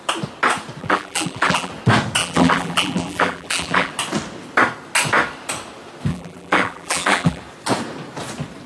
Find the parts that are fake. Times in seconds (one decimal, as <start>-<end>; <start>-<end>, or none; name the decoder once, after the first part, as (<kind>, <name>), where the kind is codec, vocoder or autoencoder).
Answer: 0.8-1.7 (vocoder, BigVGAN v2); 2.2-3.9; 6.1-7.4